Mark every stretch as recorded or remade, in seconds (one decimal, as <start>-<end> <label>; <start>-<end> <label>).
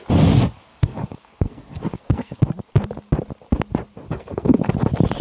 0.0-0.7 recorded; 0.7-2.4 remade; 2.4-4.1 recorded; 4.1-4.7 remade; 4.7-5.2 recorded